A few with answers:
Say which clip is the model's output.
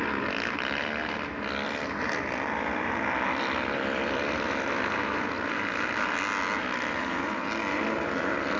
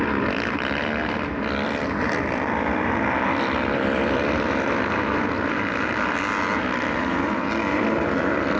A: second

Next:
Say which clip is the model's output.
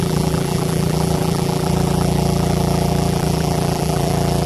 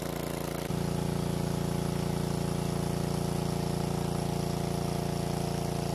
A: first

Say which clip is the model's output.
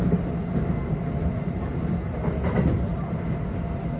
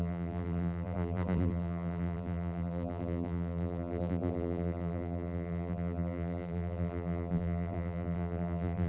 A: second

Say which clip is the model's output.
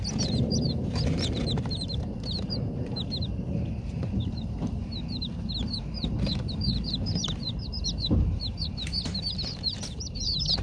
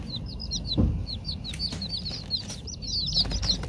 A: first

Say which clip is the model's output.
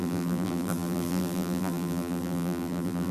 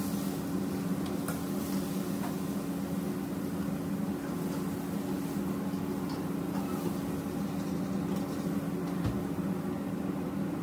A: first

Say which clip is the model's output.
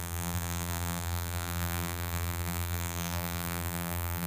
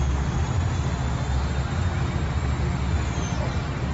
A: first